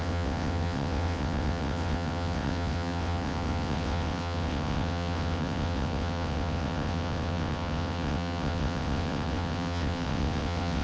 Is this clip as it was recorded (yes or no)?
no